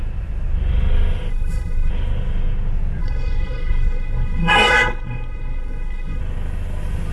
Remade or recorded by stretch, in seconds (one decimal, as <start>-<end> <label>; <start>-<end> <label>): 0.0-1.3 recorded; 1.3-1.9 remade; 1.9-3.0 recorded; 3.0-6.2 remade; 6.2-7.1 recorded